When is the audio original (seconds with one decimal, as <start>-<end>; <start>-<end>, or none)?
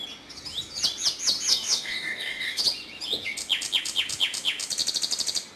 0.0-1.5; 2.6-5.6